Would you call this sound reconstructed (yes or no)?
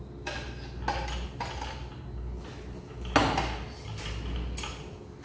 no